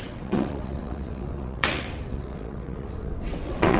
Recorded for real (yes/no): no